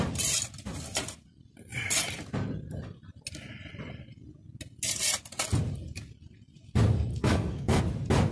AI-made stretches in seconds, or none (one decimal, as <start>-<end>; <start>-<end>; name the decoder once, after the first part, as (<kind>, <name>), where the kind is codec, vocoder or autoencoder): 7.1-7.8 (codec, SNAC)